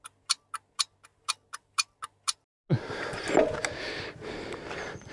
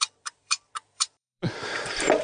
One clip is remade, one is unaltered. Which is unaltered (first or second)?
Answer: first